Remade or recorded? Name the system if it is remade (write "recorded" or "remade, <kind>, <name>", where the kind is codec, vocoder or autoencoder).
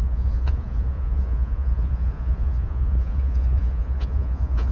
remade, vocoder, Vocos